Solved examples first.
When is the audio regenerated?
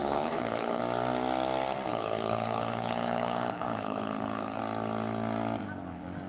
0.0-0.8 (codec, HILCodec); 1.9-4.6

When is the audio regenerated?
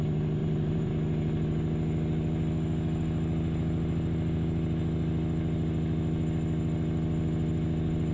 0.4-0.9 (vocoder, BigVGAN v2)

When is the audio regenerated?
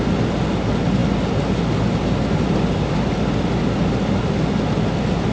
none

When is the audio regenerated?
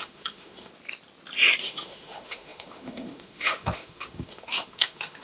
0.0-0.7 (autoencoder, DAC-VAE); 1.6-5.2